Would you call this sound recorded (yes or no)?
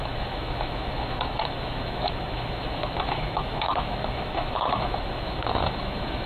no